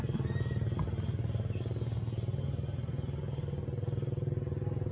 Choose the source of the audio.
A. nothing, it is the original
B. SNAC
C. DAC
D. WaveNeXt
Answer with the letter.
A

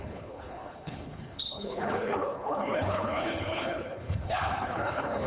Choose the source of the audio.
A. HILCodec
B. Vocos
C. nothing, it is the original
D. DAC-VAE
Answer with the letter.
A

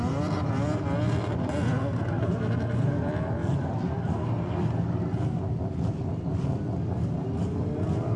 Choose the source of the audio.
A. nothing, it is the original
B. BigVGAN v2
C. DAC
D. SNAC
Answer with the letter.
A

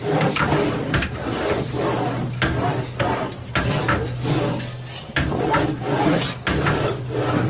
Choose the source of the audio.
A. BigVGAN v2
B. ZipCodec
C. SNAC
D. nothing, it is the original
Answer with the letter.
D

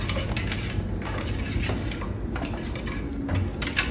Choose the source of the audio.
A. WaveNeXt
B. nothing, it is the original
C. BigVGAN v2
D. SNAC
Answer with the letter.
B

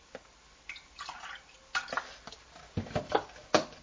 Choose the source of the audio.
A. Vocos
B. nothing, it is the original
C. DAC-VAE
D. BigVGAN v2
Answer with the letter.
B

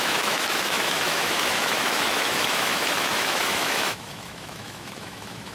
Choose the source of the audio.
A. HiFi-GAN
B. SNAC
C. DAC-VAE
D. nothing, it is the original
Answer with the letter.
C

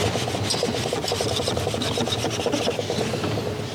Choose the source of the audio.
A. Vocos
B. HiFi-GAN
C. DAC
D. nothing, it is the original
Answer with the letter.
D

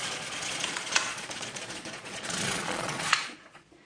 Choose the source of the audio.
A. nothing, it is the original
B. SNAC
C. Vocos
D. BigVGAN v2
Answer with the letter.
C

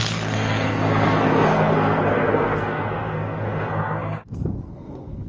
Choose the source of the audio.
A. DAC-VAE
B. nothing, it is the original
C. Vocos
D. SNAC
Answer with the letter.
D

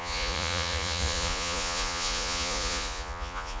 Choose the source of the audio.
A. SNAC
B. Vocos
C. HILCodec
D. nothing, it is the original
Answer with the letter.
B